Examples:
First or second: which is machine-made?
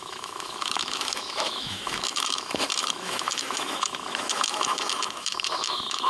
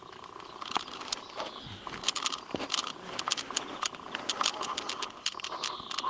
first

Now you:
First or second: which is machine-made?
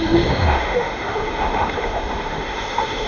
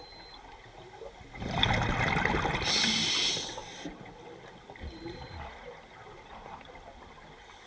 first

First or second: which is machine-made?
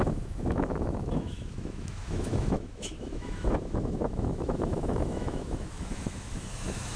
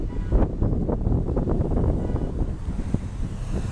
first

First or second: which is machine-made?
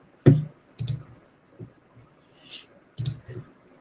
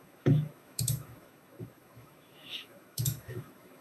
second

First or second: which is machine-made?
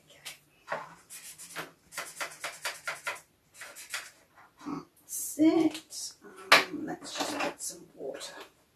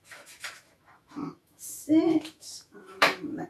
second